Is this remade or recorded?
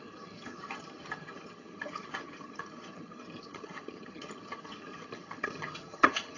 remade